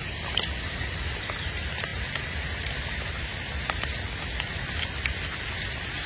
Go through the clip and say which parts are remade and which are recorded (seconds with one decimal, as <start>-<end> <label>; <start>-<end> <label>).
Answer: 0.0-6.1 recorded